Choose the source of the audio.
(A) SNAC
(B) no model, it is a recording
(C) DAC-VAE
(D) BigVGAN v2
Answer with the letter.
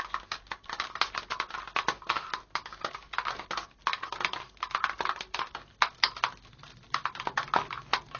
B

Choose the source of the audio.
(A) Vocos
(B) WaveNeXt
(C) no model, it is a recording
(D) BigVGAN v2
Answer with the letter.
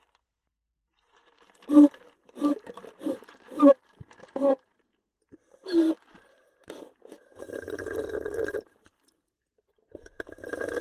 D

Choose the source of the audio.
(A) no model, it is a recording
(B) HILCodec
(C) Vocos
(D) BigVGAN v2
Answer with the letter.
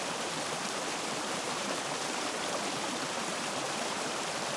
D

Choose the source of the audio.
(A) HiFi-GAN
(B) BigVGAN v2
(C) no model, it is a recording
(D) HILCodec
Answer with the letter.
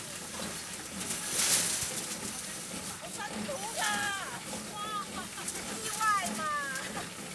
C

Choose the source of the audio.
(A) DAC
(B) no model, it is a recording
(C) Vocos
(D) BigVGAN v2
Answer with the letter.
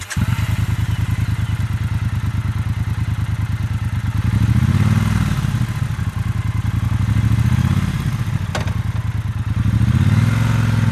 B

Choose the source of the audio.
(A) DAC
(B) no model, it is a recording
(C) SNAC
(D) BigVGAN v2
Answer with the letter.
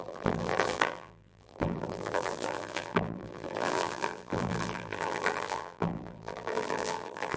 D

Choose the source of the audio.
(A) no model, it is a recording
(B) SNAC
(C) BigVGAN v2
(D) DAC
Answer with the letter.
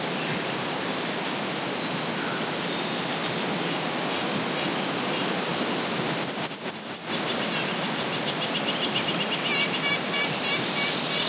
A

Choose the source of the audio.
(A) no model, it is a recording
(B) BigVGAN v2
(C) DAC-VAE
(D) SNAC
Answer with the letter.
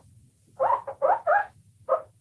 A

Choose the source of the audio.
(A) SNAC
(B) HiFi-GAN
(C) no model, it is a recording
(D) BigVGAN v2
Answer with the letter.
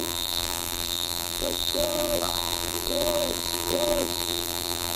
D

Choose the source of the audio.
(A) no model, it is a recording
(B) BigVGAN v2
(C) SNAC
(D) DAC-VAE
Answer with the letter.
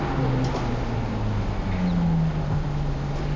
A